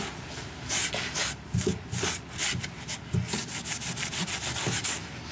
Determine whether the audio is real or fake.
real